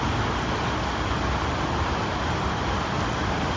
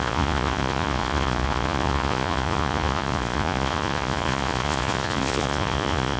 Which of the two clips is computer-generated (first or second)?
second